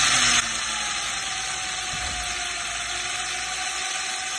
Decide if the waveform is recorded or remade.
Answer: recorded